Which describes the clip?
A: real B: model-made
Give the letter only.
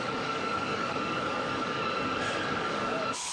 B